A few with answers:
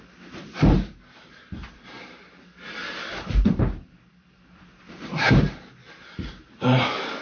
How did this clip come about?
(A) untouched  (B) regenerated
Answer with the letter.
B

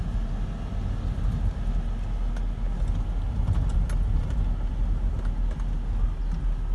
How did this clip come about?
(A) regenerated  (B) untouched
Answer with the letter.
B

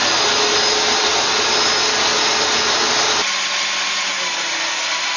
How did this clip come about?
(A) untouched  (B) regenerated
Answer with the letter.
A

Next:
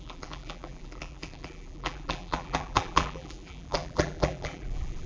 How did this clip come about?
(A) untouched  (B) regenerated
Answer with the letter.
B